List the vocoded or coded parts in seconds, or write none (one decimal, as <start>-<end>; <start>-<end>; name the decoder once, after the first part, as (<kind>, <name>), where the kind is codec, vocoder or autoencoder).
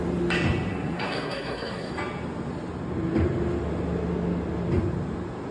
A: 0.7-1.9 (codec, SNAC)